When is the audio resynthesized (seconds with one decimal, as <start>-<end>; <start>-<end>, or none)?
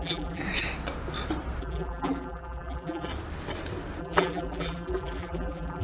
0.0-0.4; 1.6-3.1; 4.0-5.8